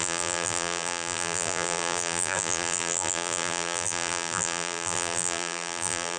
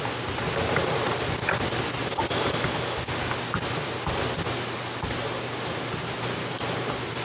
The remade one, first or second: first